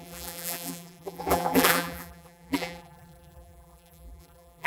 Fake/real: fake